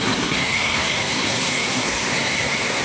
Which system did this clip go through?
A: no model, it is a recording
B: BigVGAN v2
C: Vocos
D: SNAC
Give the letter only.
D